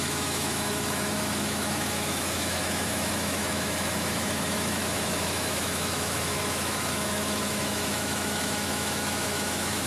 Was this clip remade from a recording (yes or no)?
yes